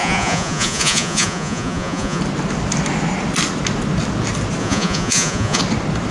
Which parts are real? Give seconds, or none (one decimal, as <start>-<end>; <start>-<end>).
2.2-4.6; 5.6-6.1